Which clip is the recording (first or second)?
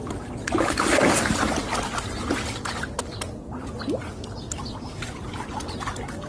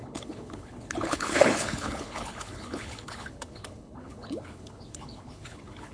first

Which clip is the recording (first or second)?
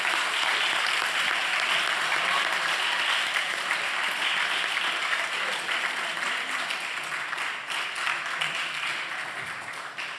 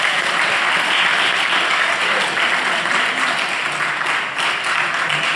second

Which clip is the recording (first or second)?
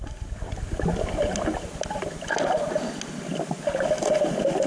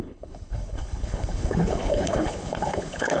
first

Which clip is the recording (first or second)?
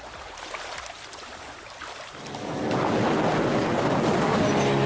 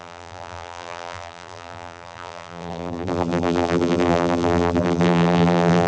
first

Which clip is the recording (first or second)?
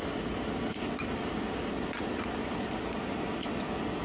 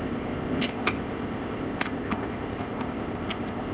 first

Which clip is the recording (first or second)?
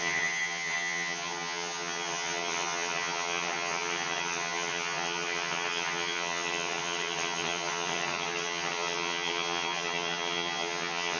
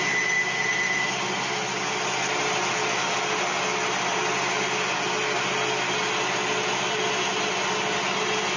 second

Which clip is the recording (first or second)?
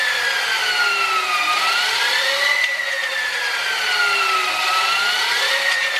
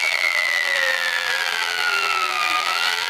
first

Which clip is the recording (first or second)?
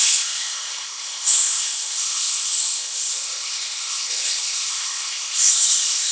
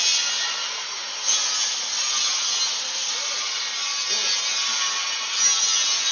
second